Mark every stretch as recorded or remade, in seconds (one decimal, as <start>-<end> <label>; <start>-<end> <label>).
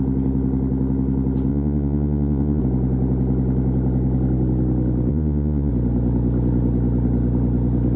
0.0-1.5 recorded; 1.5-2.6 remade; 2.6-5.1 recorded; 5.1-5.7 remade; 5.7-8.0 recorded